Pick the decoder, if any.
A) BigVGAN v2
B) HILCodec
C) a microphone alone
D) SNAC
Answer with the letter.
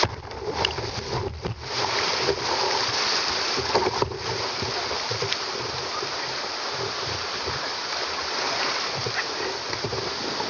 A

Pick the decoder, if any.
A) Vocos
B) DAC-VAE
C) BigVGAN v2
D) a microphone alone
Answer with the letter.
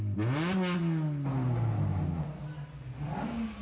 D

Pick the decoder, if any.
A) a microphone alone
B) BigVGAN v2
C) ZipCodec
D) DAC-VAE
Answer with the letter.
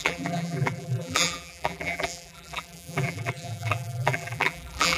B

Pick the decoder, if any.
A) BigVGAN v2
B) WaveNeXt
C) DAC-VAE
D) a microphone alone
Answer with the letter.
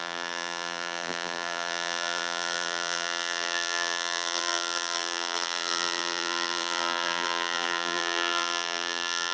A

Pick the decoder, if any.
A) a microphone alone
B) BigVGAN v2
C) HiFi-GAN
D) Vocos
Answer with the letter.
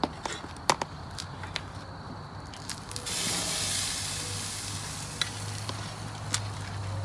A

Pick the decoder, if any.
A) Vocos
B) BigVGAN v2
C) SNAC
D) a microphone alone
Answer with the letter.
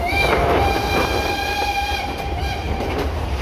B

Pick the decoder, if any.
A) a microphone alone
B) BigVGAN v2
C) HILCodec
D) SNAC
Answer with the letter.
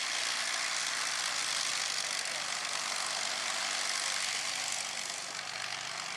A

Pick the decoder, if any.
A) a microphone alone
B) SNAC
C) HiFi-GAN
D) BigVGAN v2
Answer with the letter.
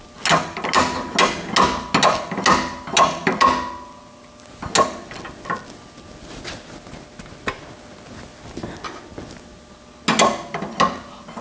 A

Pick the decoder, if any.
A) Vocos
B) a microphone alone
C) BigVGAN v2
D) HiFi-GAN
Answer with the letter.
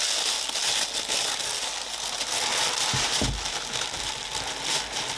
B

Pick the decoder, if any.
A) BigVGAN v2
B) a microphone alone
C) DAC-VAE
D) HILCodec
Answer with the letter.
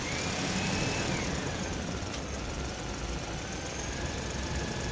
A